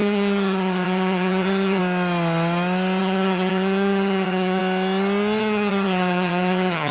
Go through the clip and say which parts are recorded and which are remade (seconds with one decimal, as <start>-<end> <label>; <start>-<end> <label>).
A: 0.0-1.8 remade; 1.8-3.0 recorded; 3.0-4.6 remade; 4.6-5.4 recorded; 5.4-6.9 remade